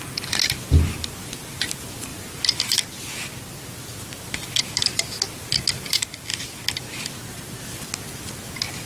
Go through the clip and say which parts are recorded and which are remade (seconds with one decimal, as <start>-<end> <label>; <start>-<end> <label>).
0.0-8.9 recorded

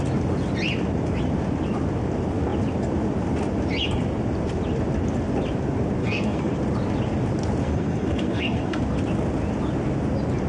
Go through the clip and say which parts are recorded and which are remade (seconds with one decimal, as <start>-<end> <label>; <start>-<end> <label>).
0.0-6.0 recorded; 6.0-6.5 remade; 6.5-7.6 recorded; 7.6-8.8 remade; 8.8-10.5 recorded

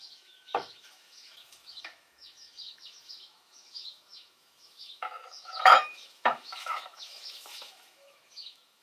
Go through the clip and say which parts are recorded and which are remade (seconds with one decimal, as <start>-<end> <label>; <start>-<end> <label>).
0.0-8.8 remade

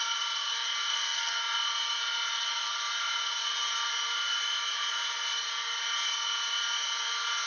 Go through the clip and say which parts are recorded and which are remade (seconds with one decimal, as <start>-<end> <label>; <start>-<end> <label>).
0.0-0.9 recorded; 0.9-1.4 remade; 1.4-7.5 recorded